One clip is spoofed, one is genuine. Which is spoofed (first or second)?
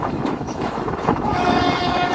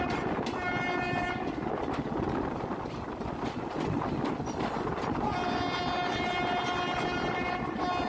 first